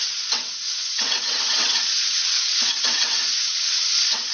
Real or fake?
fake